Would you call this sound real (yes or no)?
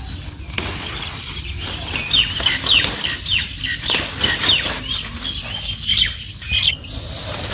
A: yes